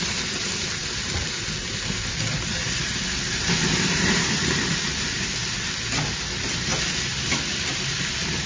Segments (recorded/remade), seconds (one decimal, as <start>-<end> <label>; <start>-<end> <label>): 0.0-8.5 recorded